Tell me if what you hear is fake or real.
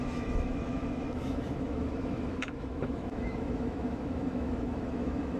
fake